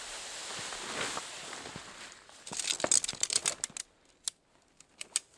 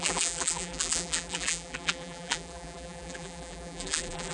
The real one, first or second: first